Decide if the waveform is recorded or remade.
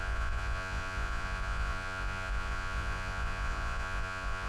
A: remade